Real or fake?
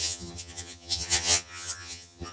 fake